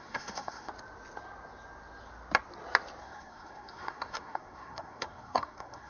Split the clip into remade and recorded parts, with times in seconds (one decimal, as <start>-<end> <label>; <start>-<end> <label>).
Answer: 0.0-0.7 remade; 0.7-3.0 recorded; 3.0-5.9 remade